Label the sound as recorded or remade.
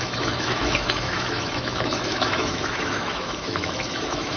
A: remade